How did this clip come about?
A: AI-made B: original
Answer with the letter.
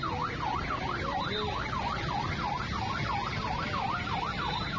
B